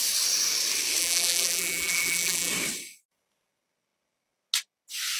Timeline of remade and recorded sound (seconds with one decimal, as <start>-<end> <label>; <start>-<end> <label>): 0.0-1.0 recorded; 1.0-2.5 remade; 2.5-5.2 recorded